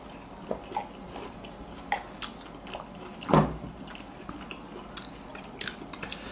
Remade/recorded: recorded